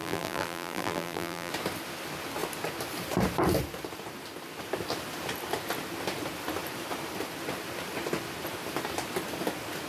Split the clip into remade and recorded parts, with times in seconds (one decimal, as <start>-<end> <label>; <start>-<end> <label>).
0.0-1.5 remade; 1.5-9.9 recorded

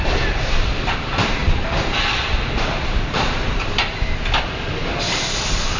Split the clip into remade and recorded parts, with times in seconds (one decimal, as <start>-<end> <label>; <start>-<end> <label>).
0.0-5.8 recorded

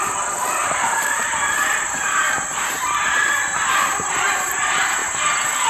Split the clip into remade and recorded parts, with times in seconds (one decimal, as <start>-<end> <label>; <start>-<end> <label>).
0.0-0.6 recorded; 0.6-1.6 remade; 1.6-5.0 recorded; 5.0-5.7 remade

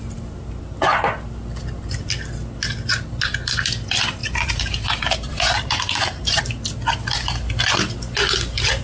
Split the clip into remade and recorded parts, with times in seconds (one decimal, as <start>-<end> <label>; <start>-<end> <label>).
0.0-4.2 recorded; 4.2-6.4 remade; 6.4-8.8 recorded